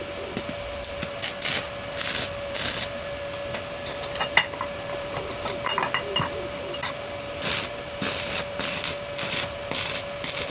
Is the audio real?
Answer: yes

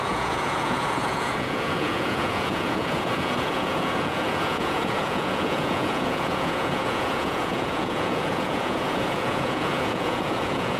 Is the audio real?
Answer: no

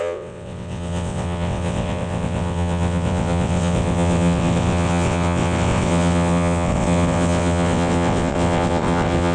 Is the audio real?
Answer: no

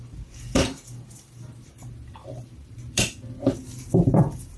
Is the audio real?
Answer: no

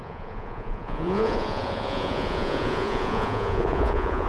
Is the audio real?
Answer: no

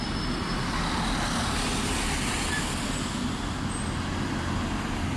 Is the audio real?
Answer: yes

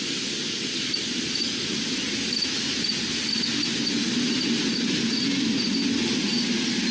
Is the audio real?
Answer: yes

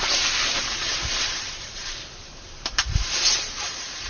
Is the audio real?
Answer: no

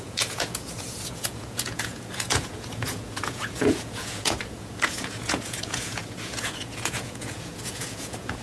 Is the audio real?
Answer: no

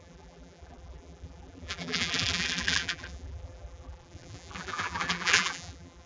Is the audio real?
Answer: no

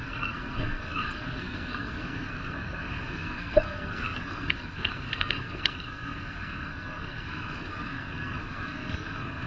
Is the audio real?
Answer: no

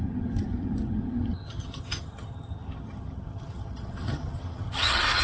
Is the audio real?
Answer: no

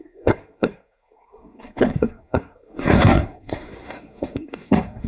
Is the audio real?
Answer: no